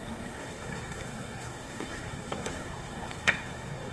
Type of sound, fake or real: fake